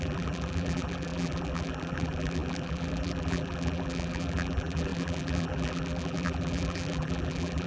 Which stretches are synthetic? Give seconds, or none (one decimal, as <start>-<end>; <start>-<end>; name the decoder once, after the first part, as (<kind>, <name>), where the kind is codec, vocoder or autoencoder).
0.0-7.7 (vocoder, BigVGAN v2)